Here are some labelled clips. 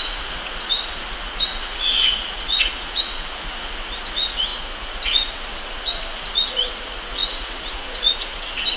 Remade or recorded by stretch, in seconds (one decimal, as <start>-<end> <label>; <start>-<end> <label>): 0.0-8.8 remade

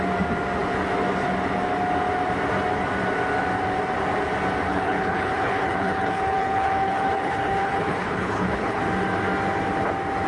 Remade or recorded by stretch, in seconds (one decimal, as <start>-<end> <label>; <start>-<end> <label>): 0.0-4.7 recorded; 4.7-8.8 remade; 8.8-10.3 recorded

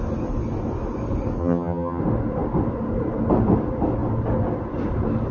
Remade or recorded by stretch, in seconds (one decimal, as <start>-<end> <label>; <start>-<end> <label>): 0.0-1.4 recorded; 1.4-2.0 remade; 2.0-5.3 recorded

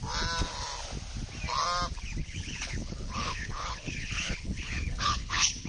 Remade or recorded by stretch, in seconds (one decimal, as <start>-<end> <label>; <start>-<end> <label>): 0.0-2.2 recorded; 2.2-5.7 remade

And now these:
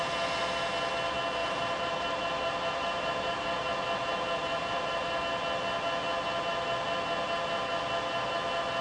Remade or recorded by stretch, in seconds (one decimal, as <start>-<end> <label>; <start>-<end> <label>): 0.0-1.4 recorded; 1.4-5.2 remade; 5.2-8.8 recorded